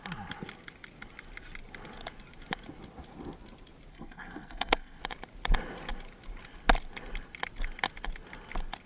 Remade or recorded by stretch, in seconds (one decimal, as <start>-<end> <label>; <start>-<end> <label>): 0.0-3.9 recorded; 3.9-5.0 remade; 5.0-8.9 recorded

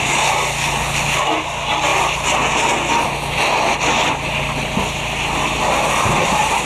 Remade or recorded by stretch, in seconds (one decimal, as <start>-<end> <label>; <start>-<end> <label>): 0.0-6.7 recorded

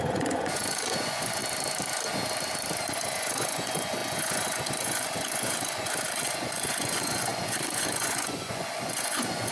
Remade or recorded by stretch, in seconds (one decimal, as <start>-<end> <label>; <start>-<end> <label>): 0.0-1.4 remade; 1.4-2.9 recorded; 2.9-9.5 remade

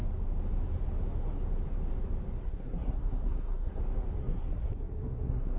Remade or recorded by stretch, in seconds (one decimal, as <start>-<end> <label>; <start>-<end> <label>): 0.0-2.4 recorded; 2.4-3.8 remade; 3.8-4.2 recorded; 4.2-5.6 remade

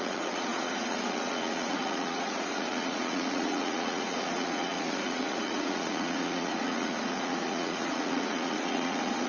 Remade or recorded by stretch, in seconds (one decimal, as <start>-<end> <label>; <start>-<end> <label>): 0.0-9.3 remade

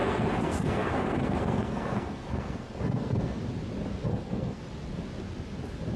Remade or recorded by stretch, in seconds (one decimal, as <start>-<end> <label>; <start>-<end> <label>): 0.0-3.4 remade; 3.4-4.1 recorded; 4.1-4.6 remade; 4.6-6.0 recorded

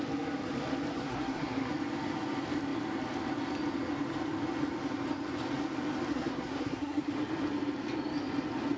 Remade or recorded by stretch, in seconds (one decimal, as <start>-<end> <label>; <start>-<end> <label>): 0.0-0.9 recorded; 0.9-1.7 remade; 1.7-6.1 recorded; 6.1-7.1 remade; 7.1-8.8 recorded

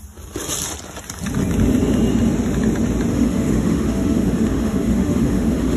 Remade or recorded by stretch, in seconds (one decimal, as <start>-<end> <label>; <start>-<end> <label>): 0.0-3.1 recorded; 3.1-5.8 remade